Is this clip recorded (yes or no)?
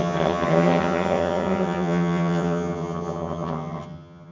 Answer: no